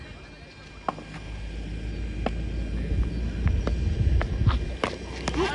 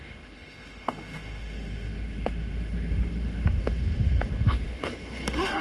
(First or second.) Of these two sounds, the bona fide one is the first